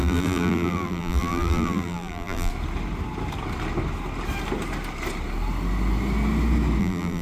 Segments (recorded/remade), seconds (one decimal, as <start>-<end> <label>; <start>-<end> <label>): 0.0-2.5 remade; 2.5-6.8 recorded; 6.8-7.2 remade